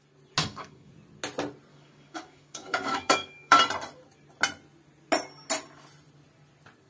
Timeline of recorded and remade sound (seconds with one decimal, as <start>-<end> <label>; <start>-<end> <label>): 0.0-0.4 recorded; 0.4-0.9 remade; 0.9-1.7 recorded; 1.7-3.6 remade; 3.6-6.9 recorded